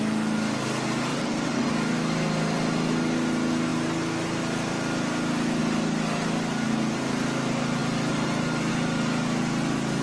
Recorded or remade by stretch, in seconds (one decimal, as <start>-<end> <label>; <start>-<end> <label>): 0.0-1.1 recorded; 1.1-1.7 remade; 1.7-10.0 recorded